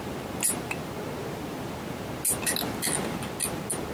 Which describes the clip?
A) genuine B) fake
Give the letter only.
A